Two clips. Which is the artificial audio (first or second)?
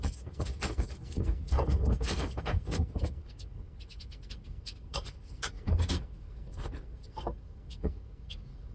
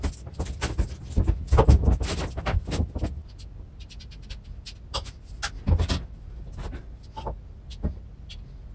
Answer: first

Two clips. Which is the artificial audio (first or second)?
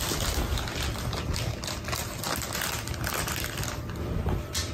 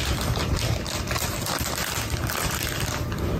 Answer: second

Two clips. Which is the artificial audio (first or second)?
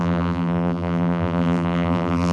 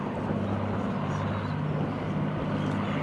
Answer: first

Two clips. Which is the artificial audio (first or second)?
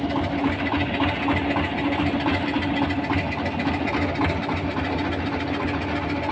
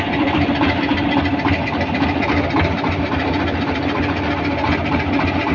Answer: second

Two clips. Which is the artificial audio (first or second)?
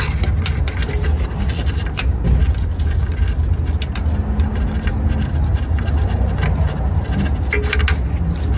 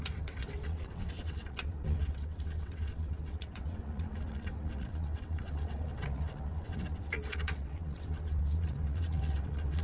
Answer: second